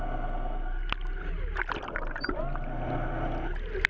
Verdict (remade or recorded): recorded